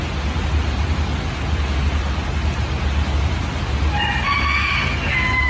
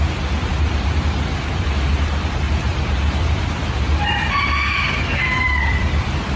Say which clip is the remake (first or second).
second